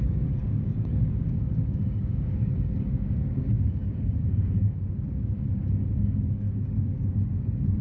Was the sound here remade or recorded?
remade